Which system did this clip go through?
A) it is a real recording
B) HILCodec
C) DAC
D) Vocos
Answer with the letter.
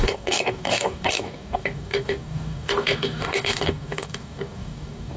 C